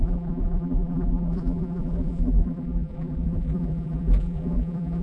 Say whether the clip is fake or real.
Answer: fake